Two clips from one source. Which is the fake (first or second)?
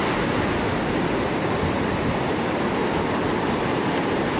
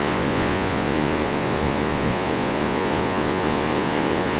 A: second